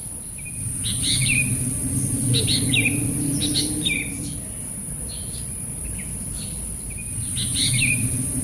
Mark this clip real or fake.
fake